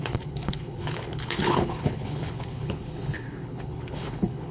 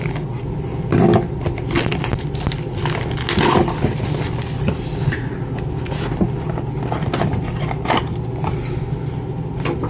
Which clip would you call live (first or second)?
second